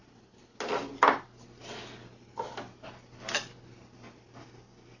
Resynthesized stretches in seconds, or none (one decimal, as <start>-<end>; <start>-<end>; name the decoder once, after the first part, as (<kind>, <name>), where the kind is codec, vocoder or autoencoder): none